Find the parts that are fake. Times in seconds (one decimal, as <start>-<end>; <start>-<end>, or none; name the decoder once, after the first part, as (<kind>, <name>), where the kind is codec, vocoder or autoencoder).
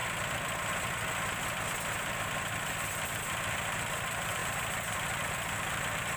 2.2-4.4 (vocoder, BigVGAN v2); 4.9-6.2